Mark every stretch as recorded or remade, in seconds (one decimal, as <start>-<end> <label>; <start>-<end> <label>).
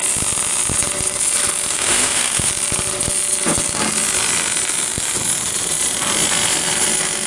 0.0-1.7 recorded; 1.7-2.5 remade; 2.5-7.3 recorded